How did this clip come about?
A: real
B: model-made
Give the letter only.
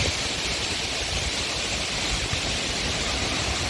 A